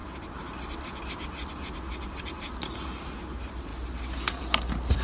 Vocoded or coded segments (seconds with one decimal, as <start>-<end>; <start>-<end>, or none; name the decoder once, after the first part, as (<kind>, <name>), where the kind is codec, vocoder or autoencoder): none